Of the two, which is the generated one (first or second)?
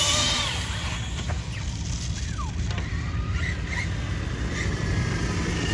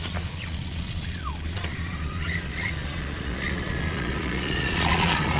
second